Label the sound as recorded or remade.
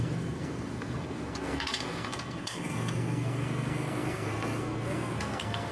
remade